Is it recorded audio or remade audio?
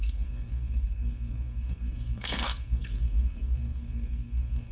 remade